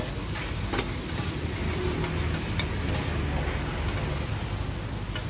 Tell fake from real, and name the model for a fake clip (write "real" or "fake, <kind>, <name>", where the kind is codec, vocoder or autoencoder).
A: real